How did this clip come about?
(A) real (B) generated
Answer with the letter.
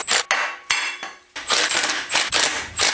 A